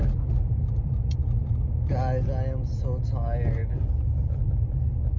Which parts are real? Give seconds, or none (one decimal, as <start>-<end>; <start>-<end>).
1.2-4.2